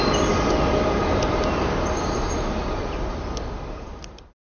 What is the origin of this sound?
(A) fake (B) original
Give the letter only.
B